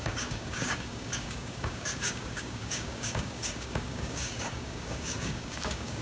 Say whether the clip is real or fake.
fake